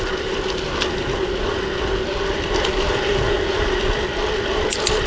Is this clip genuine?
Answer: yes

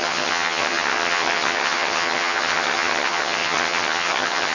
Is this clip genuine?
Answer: no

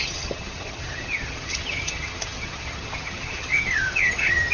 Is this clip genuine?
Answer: no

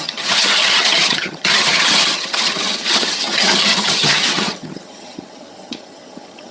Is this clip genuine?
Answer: no